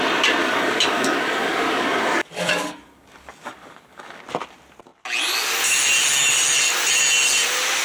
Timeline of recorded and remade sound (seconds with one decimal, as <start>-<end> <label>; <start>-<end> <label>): 0.0-0.4 recorded; 0.4-4.2 remade; 4.2-7.8 recorded